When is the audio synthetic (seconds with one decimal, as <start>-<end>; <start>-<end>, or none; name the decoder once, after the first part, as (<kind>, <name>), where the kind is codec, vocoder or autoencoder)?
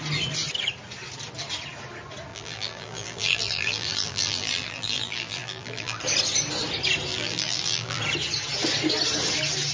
2.3-6.0 (vocoder, BigVGAN v2); 7.1-8.0